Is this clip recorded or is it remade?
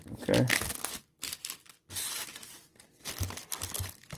recorded